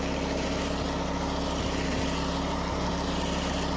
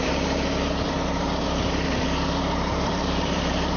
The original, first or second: first